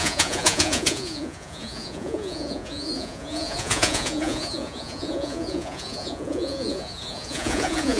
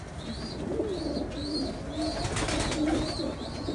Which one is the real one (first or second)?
second